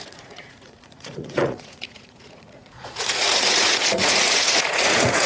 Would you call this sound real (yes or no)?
no